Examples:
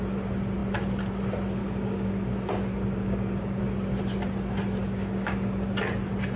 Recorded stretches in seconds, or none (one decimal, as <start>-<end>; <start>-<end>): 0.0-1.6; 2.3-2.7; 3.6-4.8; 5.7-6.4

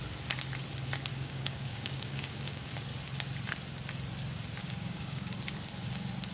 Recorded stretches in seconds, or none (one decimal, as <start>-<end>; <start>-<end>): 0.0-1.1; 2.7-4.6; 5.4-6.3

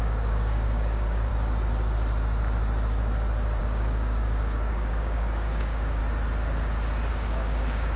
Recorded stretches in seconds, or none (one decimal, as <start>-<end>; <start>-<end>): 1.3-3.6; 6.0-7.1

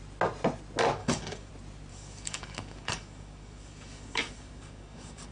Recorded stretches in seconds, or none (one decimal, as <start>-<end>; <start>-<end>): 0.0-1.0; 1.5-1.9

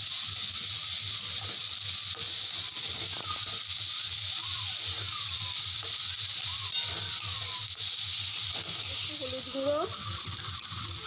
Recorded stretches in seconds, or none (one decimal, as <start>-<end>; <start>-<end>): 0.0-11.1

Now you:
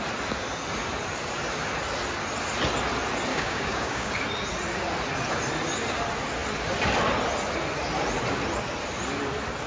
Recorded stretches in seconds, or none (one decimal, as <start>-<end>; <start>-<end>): 0.0-3.3; 4.1-9.7

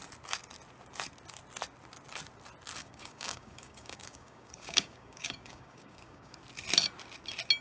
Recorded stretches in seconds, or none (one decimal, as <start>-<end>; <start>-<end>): 0.0-2.8; 6.4-7.6

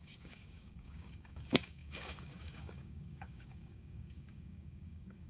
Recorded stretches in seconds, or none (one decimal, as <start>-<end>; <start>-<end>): none